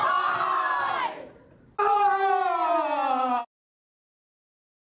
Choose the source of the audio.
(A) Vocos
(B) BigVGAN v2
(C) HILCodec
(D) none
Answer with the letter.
D